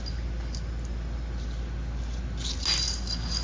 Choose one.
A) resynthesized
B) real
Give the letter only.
B